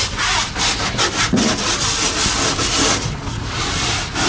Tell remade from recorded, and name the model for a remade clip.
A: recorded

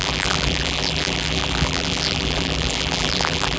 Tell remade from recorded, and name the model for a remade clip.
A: remade, vocoder, BigVGAN v2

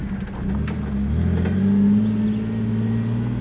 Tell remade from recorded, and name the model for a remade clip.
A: recorded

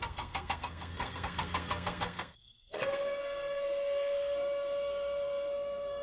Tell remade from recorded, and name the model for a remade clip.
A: remade, codec, SNAC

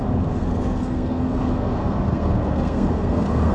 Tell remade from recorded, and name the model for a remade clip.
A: remade, codec, SNAC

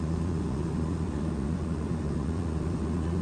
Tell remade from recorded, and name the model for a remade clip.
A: remade, vocoder, Vocos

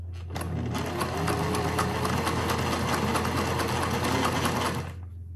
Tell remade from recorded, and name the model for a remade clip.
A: recorded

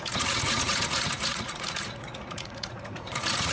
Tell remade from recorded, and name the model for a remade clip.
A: remade, vocoder, Vocos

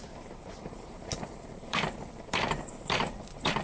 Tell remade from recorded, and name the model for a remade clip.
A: remade, vocoder, BigVGAN v2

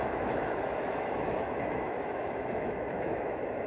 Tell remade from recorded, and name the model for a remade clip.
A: remade, autoencoder, DAC-VAE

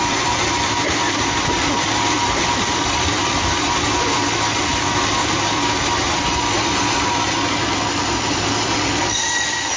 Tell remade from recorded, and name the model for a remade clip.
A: remade, vocoder, BigVGAN v2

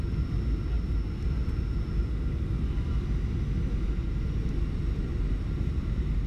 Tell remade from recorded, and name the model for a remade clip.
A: recorded